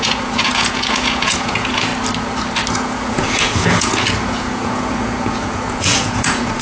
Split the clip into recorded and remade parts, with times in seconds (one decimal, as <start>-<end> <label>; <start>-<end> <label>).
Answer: 0.0-1.9 remade; 1.9-2.7 recorded; 2.7-6.6 remade